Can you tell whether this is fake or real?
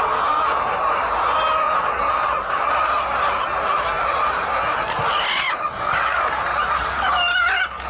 real